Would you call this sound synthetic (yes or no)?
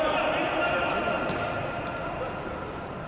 no